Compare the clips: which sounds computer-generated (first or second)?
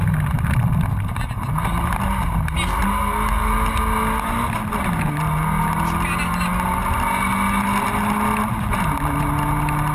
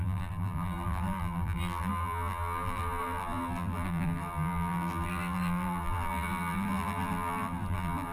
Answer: second